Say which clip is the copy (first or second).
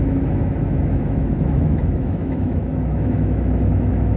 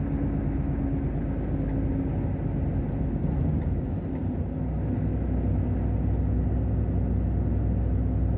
first